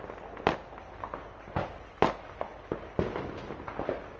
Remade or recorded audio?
recorded